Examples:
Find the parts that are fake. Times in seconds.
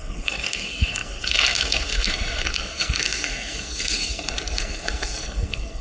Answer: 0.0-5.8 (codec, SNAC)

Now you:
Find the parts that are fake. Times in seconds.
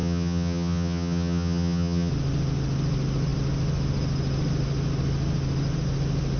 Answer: 0.0-2.1 (vocoder, HiFi-GAN)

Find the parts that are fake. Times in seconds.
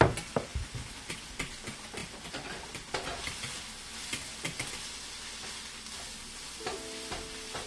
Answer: none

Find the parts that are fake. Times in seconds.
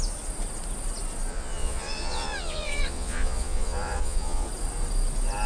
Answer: 1.3-4.5 (vocoder, Vocos)